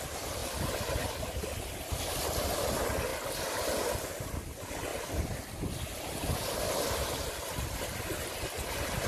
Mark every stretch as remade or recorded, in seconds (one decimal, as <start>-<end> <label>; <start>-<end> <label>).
0.0-9.1 recorded